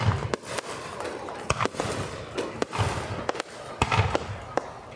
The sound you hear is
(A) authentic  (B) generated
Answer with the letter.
A